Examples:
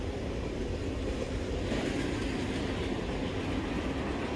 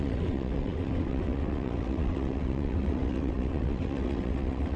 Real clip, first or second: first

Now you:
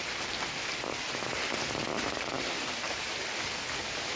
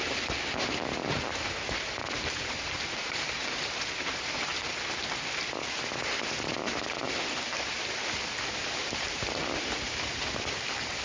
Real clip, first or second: first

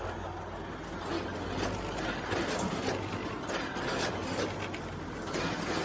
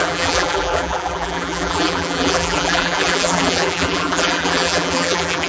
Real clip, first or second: first